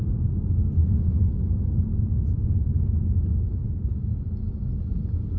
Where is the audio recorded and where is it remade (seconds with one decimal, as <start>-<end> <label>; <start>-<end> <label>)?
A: 0.0-0.8 recorded; 0.8-1.3 remade; 1.3-2.1 recorded; 2.1-3.0 remade; 3.0-3.6 recorded; 3.6-4.2 remade; 4.2-5.4 recorded